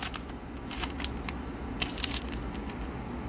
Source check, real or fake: real